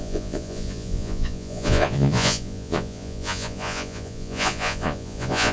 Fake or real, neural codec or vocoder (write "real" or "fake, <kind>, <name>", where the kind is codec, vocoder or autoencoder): fake, vocoder, Vocos